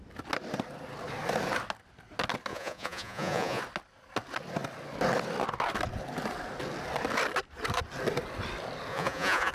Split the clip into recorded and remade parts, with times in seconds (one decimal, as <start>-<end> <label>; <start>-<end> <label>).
0.0-2.5 recorded; 2.5-3.6 remade; 3.6-8.9 recorded; 8.9-9.5 remade